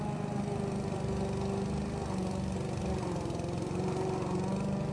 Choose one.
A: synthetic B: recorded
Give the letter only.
B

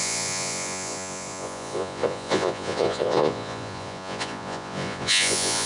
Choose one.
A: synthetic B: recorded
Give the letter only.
A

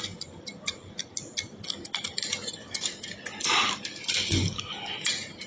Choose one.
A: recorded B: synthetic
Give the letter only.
A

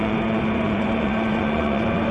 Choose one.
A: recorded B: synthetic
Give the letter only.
B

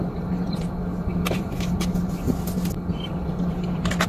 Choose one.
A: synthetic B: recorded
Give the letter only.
B